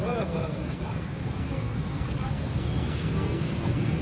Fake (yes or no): yes